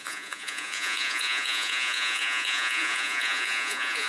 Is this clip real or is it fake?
fake